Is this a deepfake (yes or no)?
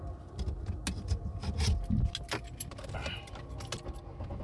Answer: no